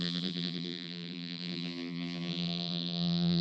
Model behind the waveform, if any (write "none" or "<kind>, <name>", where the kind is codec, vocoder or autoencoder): vocoder, BigVGAN v2